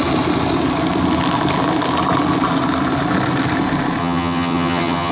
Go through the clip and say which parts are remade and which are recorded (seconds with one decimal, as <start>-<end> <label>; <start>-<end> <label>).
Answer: 0.0-4.0 recorded; 4.0-5.1 remade